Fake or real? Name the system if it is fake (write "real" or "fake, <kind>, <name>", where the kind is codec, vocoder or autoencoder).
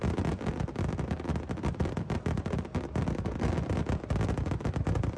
real